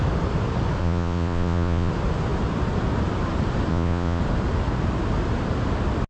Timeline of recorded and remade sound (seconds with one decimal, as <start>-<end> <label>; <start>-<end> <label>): 0.0-0.8 recorded; 0.8-1.9 remade; 1.9-3.7 recorded; 3.7-4.2 remade; 4.2-6.1 recorded